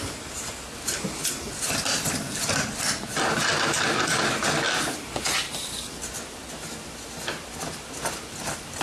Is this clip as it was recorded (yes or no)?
yes